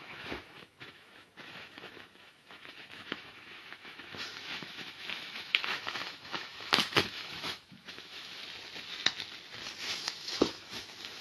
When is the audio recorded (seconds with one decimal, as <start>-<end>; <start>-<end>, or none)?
8.4-9.8